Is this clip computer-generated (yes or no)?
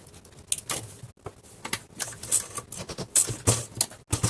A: no